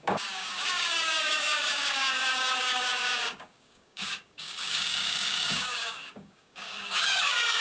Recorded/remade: remade